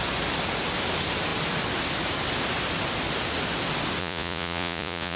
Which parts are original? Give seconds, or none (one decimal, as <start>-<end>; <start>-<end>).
0.0-4.0